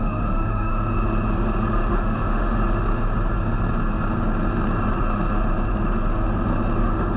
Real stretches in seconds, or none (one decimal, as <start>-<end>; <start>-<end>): 0.7-1.9; 2.5-6.8